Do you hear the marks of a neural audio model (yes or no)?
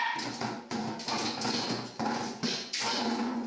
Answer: yes